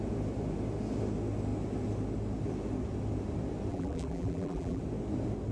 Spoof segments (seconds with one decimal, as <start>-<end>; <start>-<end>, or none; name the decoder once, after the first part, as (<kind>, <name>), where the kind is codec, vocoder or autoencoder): 3.7-4.8 (vocoder, BigVGAN v2)